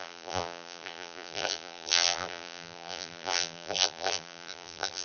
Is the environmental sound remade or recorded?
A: remade